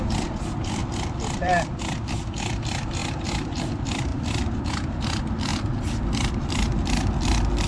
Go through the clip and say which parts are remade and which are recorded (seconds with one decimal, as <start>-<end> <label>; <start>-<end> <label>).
0.0-5.5 remade; 5.5-6.0 recorded; 6.0-7.7 remade

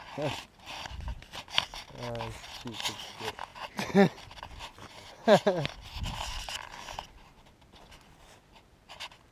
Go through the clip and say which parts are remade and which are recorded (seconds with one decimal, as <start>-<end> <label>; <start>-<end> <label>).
0.0-1.1 recorded; 1.1-1.8 remade; 1.8-5.2 recorded; 5.2-5.8 remade; 5.8-9.3 recorded

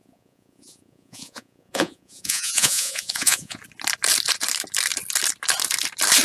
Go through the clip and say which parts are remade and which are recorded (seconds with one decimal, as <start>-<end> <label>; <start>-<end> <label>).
0.0-3.6 remade; 3.6-6.2 recorded

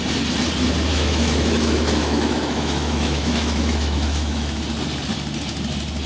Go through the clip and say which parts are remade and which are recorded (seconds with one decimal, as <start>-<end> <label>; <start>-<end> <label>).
0.0-0.9 recorded; 0.9-4.6 remade; 4.6-6.1 recorded

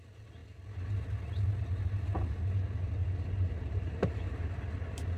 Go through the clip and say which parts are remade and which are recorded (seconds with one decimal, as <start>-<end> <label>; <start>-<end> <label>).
0.0-3.0 recorded; 3.0-4.6 remade; 4.6-5.2 recorded

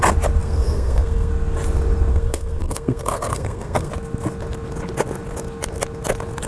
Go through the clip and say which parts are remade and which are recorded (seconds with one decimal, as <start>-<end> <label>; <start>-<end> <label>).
0.0-0.4 recorded; 0.4-1.3 remade; 1.3-2.1 recorded; 2.1-3.9 remade; 3.9-6.5 recorded

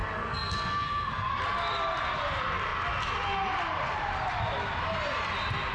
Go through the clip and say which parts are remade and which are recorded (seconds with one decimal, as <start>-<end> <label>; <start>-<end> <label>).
0.0-1.3 remade; 1.3-5.7 recorded